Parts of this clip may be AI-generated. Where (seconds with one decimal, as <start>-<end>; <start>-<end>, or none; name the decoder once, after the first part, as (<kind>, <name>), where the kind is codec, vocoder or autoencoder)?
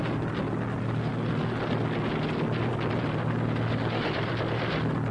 none